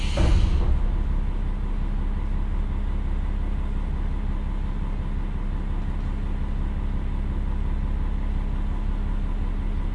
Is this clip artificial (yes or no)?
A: no